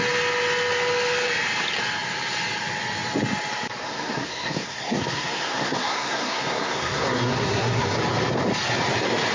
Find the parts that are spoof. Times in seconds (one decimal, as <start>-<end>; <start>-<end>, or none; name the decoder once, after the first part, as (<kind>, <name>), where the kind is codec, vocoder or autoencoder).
3.8-8.0 (codec, SNAC)